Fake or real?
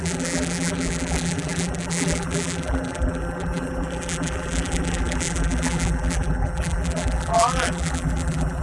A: fake